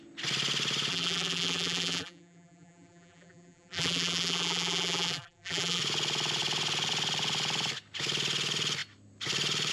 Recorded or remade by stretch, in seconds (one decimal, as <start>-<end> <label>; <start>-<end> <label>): 0.0-0.9 recorded; 0.9-5.8 remade; 5.8-9.7 recorded